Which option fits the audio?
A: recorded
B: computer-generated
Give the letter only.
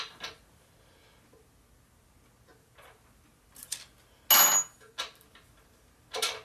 A